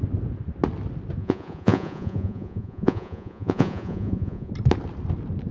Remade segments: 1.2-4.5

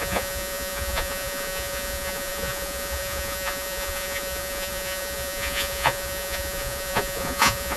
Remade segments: 0.0-7.8

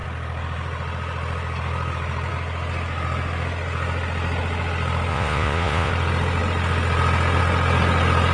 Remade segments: 5.1-5.9

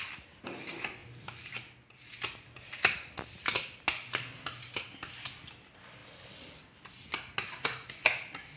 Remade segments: none